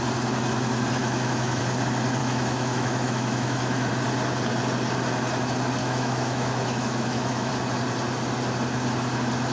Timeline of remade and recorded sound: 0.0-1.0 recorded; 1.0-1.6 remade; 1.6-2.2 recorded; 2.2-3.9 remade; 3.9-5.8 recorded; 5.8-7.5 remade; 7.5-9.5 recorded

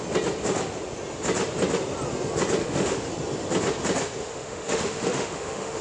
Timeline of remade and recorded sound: 0.0-2.6 recorded; 2.6-3.1 remade; 3.1-4.2 recorded; 4.2-5.8 remade